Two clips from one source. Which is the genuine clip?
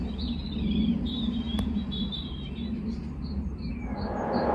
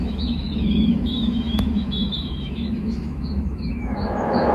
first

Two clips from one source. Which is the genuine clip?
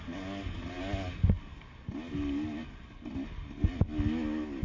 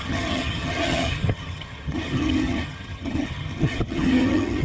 first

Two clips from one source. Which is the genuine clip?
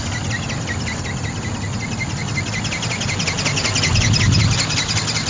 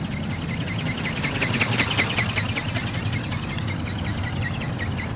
first